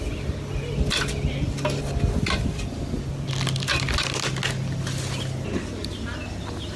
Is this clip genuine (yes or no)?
yes